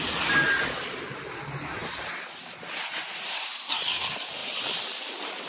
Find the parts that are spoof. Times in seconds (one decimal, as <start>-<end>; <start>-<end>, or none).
1.8-2.7; 4.4-5.1